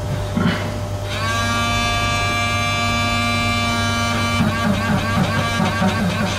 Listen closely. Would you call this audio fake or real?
real